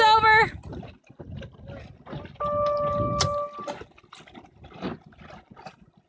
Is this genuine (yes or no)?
yes